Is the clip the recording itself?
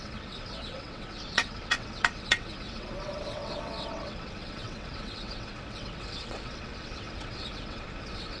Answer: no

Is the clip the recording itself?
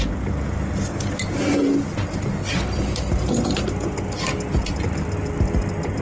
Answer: yes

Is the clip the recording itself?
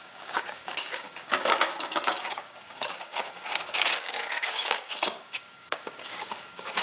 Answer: no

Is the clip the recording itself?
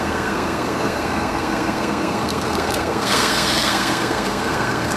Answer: no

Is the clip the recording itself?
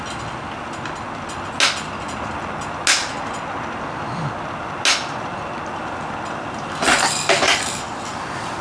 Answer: yes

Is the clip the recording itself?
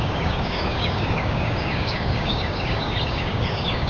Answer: no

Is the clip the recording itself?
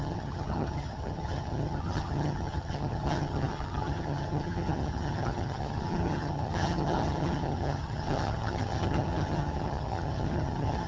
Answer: no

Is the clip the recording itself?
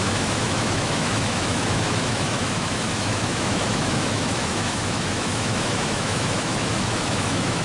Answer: no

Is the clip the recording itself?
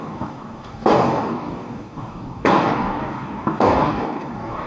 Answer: no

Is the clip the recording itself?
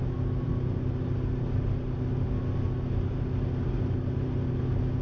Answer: yes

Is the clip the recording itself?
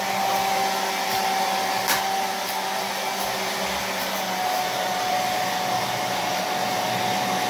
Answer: yes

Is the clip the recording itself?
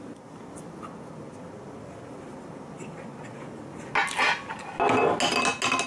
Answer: yes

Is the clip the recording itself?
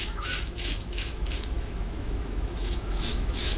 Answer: no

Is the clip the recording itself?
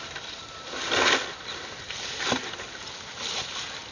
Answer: yes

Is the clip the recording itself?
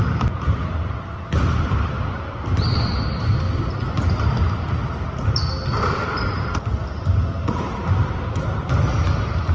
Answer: yes